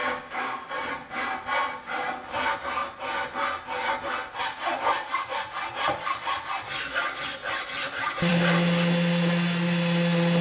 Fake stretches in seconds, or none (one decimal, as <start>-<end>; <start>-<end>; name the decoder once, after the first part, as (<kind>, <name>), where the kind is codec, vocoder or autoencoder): 0.0-0.7 (codec, DAC)